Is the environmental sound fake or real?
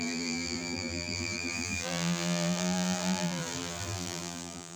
fake